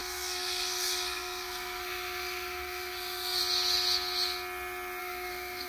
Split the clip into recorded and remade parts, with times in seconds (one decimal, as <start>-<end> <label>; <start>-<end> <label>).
0.0-3.4 remade; 3.4-5.0 recorded; 5.0-5.7 remade